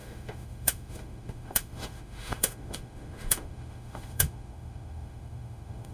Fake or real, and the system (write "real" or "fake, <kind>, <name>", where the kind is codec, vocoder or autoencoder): fake, autoencoder, DAC-VAE